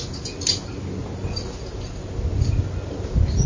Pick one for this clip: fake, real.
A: real